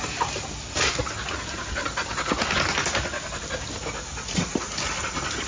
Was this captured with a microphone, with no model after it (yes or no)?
yes